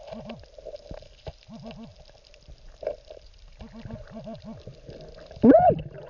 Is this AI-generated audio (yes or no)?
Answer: no